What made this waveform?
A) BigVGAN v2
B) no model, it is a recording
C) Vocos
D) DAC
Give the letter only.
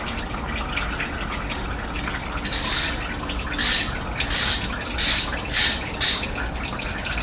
B